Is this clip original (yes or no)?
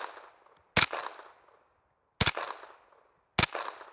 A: yes